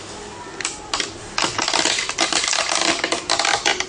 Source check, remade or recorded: recorded